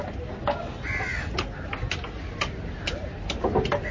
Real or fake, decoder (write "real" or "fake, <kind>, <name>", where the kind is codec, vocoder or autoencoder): real